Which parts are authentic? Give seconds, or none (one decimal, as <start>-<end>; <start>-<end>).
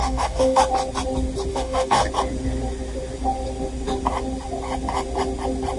0.6-1.5; 2.0-5.8